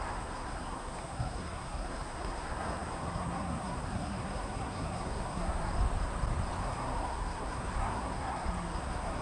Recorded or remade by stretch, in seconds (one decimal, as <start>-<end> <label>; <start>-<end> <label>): 0.0-5.7 remade; 5.7-6.6 recorded; 6.6-9.2 remade